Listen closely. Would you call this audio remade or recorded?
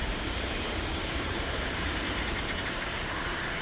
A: remade